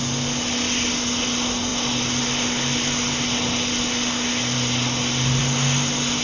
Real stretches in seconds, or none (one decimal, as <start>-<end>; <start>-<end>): 0.0-6.2